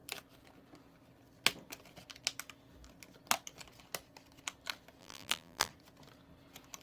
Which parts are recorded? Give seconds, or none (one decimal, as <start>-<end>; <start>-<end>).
0.0-5.0; 5.7-6.8